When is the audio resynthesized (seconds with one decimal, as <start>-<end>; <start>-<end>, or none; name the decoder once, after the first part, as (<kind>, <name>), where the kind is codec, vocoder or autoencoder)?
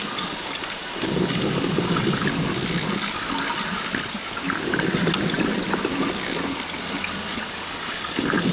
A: 0.0-2.2 (codec, DAC); 6.8-8.5